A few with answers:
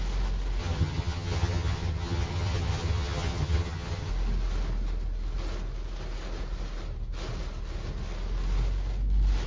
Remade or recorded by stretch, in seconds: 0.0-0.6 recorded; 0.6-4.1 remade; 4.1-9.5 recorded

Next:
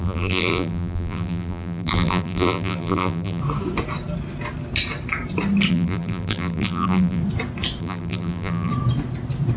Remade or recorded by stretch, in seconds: 0.0-3.4 remade; 3.4-5.7 recorded; 5.7-7.2 remade; 7.2-7.8 recorded; 7.8-8.7 remade; 8.7-9.6 recorded

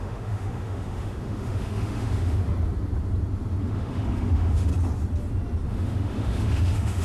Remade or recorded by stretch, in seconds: 0.0-2.4 remade; 2.4-3.6 recorded; 3.6-4.7 remade; 4.7-5.7 recorded; 5.7-7.0 remade

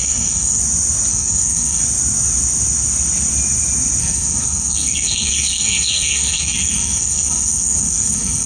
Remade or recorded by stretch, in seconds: 0.0-0.6 remade; 0.6-1.1 recorded; 1.1-1.8 remade; 1.8-4.0 recorded; 4.0-8.5 remade

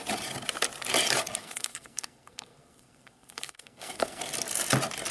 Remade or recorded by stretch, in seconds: 0.0-1.4 recorded; 1.4-4.2 remade; 4.2-5.1 recorded

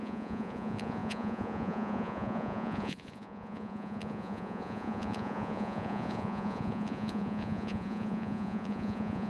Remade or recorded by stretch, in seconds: 0.0-9.3 remade